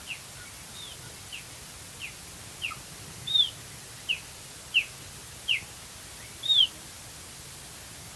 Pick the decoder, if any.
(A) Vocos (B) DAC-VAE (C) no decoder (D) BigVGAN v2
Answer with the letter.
C